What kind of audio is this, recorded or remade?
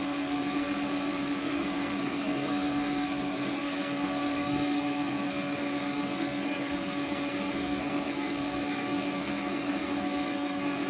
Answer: remade